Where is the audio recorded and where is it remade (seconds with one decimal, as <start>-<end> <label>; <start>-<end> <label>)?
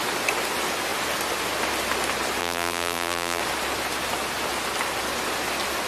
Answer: 0.0-2.4 recorded; 2.4-3.4 remade; 3.4-5.9 recorded